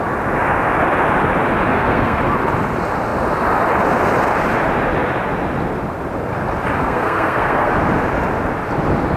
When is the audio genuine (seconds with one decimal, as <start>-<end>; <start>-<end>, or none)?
0.0-1.7; 2.2-6.8; 7.7-9.2